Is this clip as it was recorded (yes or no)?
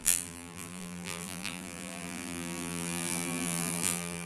no